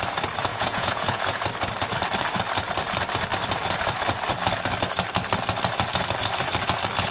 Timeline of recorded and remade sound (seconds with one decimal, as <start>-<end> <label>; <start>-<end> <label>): 0.0-0.5 recorded; 0.5-1.4 remade; 1.4-7.1 recorded